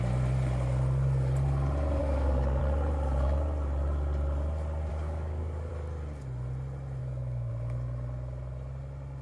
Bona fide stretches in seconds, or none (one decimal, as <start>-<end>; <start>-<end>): 0.0-2.0; 2.6-4.9; 5.7-7.0; 7.5-9.2